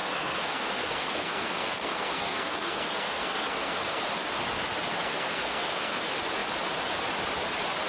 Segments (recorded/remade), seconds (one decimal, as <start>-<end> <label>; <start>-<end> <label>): 0.0-4.0 remade; 4.0-4.9 recorded; 4.9-6.0 remade; 6.0-7.9 recorded